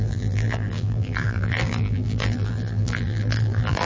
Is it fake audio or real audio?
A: fake